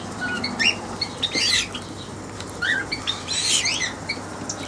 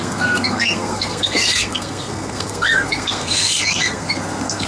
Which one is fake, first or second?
second